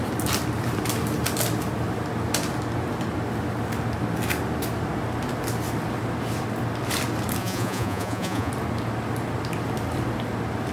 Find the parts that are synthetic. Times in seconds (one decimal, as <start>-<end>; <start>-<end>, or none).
7.4-8.5